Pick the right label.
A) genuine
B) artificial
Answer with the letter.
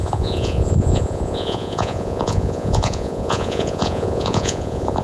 B